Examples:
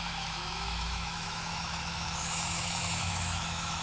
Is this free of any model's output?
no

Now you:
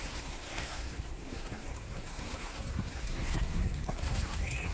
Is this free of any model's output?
no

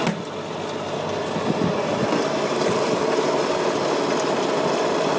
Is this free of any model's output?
yes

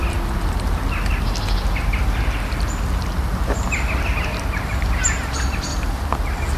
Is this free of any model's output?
yes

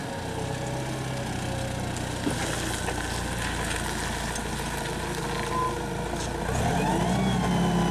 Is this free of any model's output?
yes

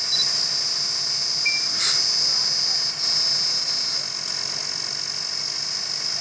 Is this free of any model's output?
yes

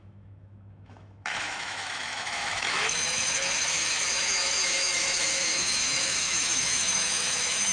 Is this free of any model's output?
no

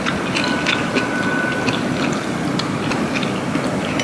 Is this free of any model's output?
yes